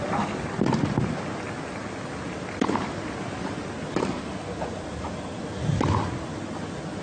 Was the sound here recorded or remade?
recorded